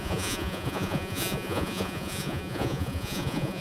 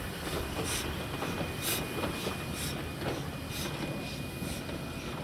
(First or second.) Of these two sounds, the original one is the second